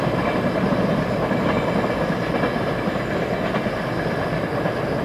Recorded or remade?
recorded